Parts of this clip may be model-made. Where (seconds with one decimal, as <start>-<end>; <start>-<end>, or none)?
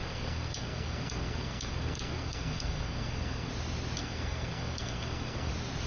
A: 0.0-3.5; 4.0-5.5